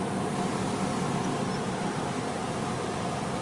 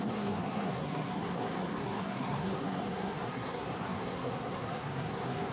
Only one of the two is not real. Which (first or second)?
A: second